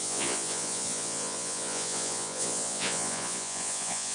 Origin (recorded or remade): remade